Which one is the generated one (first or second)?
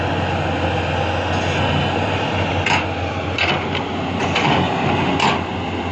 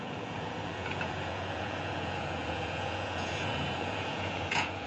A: second